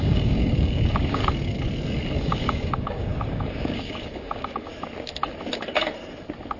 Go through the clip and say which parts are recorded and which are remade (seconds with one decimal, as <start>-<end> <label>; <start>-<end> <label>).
0.0-1.2 remade; 1.2-2.2 recorded; 2.2-4.7 remade; 4.7-6.6 recorded